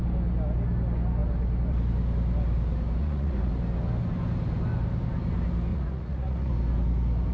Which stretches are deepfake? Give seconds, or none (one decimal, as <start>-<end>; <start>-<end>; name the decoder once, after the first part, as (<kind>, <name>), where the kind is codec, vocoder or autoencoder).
3.0-3.5 (vocoder, Vocos); 5.7-6.5